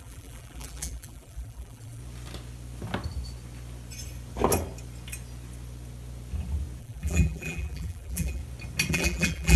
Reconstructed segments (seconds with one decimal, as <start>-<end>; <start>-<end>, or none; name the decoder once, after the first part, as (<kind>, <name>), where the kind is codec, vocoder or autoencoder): 0.0-2.0 (vocoder, BigVGAN v2); 6.8-8.4; 8.9-9.6